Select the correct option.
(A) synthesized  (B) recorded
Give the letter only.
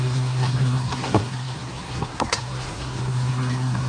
A